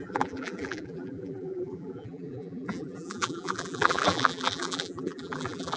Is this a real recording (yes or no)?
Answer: no